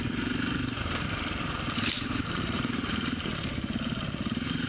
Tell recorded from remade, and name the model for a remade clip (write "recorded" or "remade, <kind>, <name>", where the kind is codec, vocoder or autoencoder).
remade, vocoder, BigVGAN v2